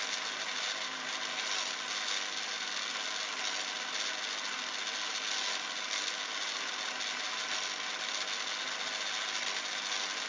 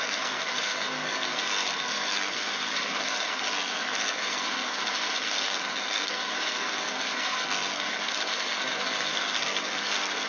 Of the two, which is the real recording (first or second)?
first